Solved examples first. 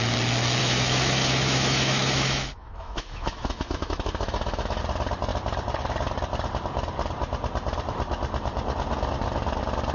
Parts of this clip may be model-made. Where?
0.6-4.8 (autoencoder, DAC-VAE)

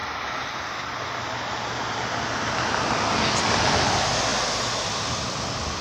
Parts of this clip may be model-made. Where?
none

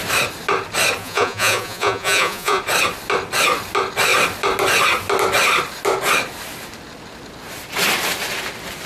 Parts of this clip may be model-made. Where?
1.0-2.6 (vocoder, Vocos)

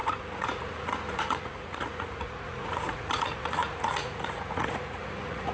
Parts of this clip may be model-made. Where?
0.0-5.5 (vocoder, Vocos)